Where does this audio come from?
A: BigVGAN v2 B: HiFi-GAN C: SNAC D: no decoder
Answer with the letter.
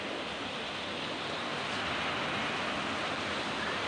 D